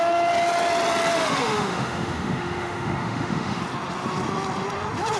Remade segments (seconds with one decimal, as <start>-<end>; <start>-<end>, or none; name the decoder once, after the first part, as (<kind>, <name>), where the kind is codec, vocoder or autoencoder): 1.1-3.6 (autoencoder, DAC-VAE)